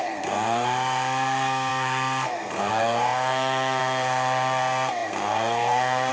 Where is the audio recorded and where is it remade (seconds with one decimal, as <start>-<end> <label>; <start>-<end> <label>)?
0.0-6.1 remade